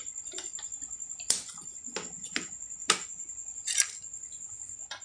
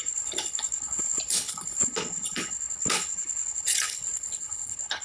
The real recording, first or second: first